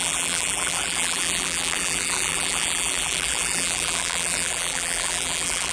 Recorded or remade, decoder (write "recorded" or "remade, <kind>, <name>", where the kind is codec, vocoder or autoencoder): remade, vocoder, BigVGAN v2